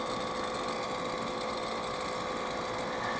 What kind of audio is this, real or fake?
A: real